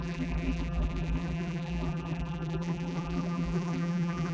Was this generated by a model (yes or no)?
yes